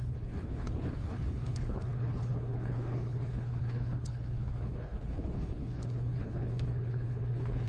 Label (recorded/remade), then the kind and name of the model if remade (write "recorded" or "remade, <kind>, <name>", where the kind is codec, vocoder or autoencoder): remade, codec, HILCodec